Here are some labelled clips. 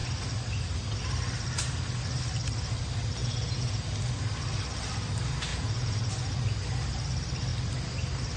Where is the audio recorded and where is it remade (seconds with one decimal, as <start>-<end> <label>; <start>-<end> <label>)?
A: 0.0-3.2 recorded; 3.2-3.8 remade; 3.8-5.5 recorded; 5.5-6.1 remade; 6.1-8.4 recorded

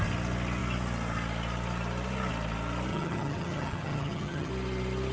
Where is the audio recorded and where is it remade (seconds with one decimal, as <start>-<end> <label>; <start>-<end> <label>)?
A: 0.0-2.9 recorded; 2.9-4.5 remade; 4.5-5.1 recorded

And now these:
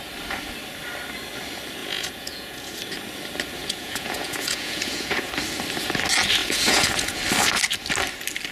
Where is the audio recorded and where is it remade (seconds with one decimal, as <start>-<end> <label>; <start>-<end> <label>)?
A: 0.0-1.8 recorded; 1.8-2.7 remade; 2.7-3.6 recorded; 3.6-5.3 remade; 5.3-6.4 recorded; 6.4-7.2 remade; 7.2-8.5 recorded